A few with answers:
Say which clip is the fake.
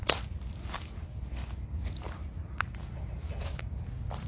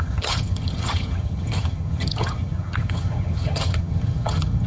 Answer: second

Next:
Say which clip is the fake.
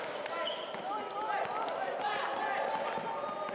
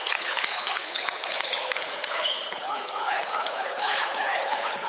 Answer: second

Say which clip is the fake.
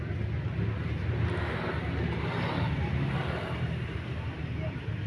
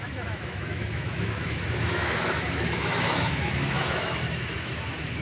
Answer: second